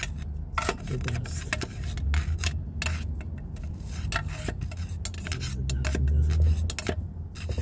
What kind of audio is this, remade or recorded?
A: recorded